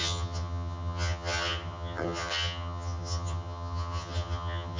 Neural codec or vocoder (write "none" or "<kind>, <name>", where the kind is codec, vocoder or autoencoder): vocoder, HiFi-GAN